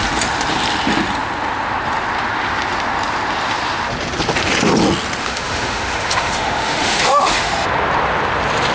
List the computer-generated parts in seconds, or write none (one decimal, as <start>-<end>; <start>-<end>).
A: 5.2-7.5